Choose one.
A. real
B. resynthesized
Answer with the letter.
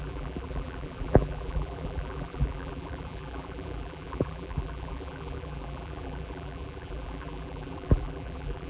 B